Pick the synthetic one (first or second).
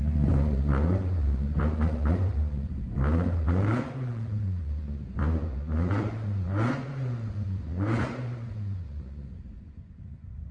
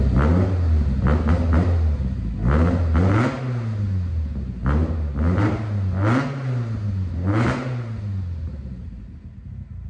first